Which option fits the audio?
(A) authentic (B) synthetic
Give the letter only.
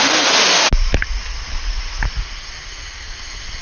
A